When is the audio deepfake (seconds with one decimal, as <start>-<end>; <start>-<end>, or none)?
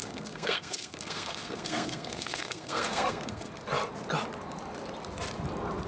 0.0-3.5